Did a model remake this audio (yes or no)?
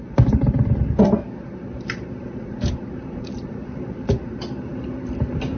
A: yes